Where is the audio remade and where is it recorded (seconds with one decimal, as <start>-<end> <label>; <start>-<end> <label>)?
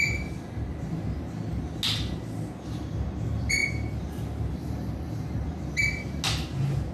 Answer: 0.0-6.9 recorded